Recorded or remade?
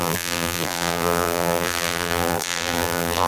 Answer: remade